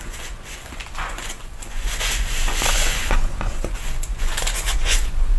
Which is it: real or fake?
fake